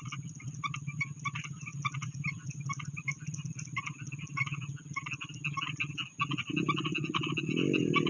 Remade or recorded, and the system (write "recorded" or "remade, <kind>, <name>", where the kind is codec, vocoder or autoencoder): recorded